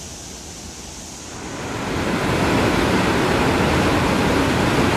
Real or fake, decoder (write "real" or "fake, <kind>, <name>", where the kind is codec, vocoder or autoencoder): real